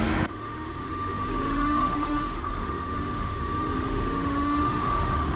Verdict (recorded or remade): remade